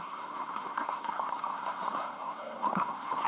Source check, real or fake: fake